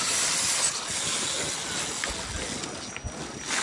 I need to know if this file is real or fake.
real